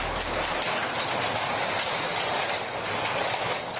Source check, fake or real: real